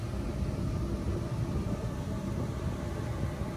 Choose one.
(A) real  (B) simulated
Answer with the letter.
A